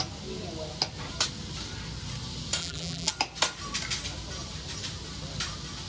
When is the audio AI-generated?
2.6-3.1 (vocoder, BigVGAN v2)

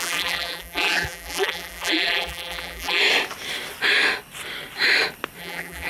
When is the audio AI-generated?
0.0-3.0 (vocoder, BigVGAN v2); 5.4-5.9

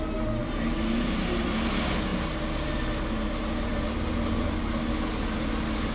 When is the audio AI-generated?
0.4-1.4 (vocoder, BigVGAN v2); 3.7-4.7

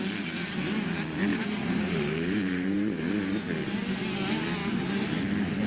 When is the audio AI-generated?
1.3-3.4 (vocoder, BigVGAN v2)